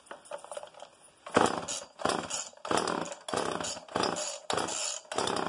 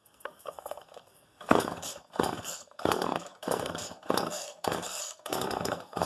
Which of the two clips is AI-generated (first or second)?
second